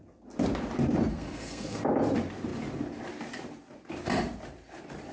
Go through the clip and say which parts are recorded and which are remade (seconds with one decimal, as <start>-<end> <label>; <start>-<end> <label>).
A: 0.0-1.1 recorded; 1.1-1.8 remade; 1.8-5.1 recorded